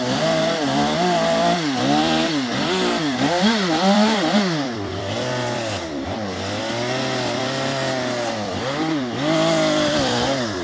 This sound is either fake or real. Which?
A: fake